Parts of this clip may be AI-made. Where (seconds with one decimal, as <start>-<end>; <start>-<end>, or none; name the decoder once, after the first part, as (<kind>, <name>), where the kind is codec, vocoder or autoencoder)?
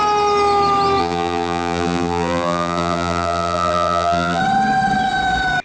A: 1.0-4.4 (vocoder, BigVGAN v2)